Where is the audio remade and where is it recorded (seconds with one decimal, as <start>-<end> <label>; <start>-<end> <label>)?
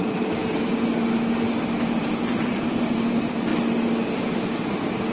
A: 0.0-0.4 remade; 0.4-2.0 recorded; 2.0-3.5 remade; 3.5-5.1 recorded